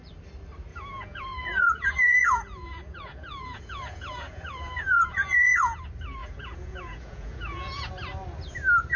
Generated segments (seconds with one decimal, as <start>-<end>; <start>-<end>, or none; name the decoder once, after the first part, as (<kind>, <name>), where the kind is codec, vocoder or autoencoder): 0.7-5.8 (vocoder, Vocos); 6.2-7.9